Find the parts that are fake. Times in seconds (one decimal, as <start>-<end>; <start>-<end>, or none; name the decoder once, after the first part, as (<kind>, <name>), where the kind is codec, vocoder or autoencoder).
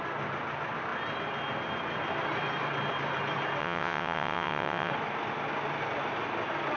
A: 3.6-4.9 (vocoder, WaveNeXt)